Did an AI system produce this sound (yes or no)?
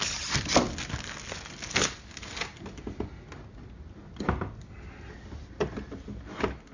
no